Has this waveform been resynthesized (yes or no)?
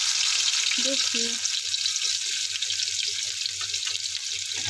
no